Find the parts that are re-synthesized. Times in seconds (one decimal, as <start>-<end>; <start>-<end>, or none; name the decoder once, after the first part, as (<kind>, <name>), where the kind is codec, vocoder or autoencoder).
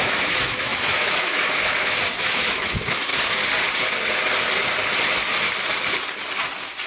0.0-3.1 (autoencoder, DAC-VAE)